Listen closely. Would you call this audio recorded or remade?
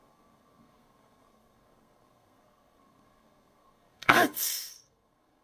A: remade